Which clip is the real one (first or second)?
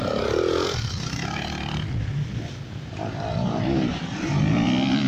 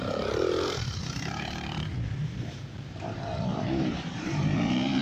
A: first